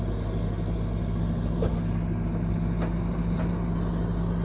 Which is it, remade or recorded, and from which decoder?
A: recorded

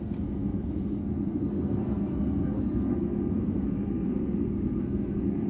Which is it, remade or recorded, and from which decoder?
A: remade, codec, SNAC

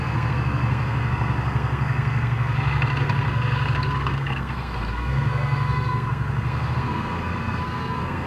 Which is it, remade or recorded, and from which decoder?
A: remade, codec, SNAC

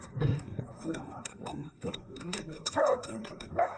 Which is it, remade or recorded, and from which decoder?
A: remade, codec, SNAC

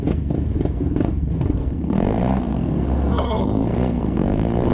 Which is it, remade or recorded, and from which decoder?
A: remade, codec, SNAC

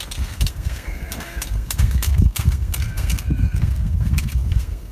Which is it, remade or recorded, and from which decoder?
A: remade, codec, SNAC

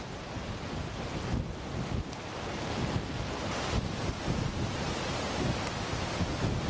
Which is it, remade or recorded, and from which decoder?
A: recorded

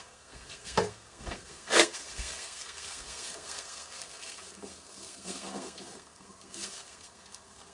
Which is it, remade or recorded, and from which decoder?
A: remade, codec, SNAC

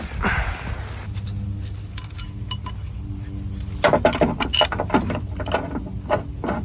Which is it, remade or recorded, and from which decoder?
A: recorded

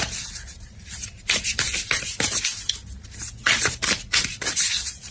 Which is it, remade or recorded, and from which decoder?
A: recorded